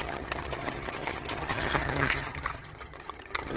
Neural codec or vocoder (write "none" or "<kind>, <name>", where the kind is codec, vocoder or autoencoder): vocoder, HiFi-GAN